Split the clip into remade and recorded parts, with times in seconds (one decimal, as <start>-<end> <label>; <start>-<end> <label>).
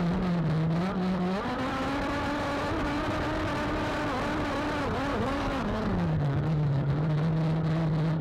0.0-5.1 recorded; 5.1-6.9 remade; 6.9-8.2 recorded